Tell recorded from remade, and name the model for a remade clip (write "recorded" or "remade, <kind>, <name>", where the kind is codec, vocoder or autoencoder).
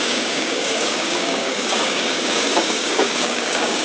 remade, codec, DAC